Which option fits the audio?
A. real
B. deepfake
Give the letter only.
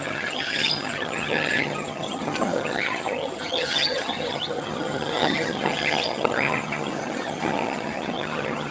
B